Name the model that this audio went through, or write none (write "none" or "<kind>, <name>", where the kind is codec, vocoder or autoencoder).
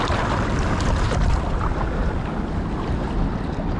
none